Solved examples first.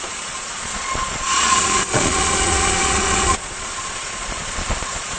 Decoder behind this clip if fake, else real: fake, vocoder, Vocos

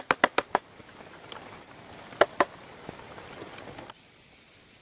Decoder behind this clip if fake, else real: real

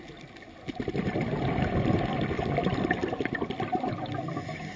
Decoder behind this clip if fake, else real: real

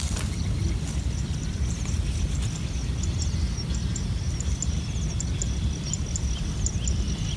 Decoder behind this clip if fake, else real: real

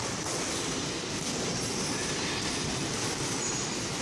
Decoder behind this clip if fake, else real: real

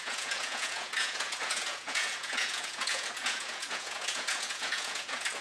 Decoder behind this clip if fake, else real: fake, vocoder, Vocos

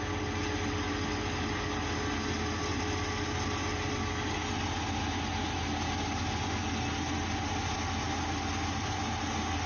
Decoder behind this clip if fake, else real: real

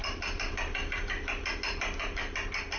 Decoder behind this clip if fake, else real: real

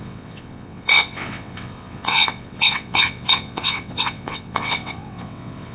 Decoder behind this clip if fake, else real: fake, vocoder, WaveNeXt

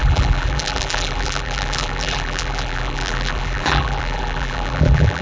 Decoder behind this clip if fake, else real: fake, vocoder, BigVGAN v2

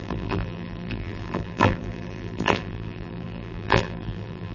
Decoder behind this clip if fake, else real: fake, vocoder, BigVGAN v2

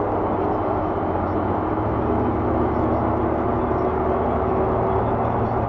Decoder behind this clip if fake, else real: real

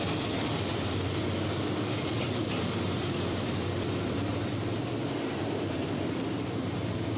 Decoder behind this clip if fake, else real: fake, vocoder, BigVGAN v2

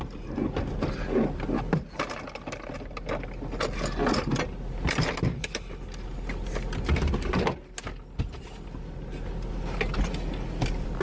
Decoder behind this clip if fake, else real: real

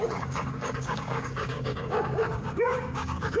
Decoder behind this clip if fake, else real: fake, codec, DAC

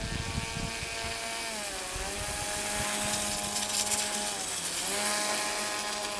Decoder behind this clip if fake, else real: real